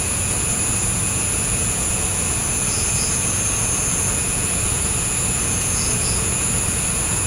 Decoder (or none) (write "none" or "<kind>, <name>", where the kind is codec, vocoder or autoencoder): vocoder, Vocos